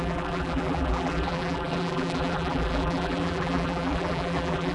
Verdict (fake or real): fake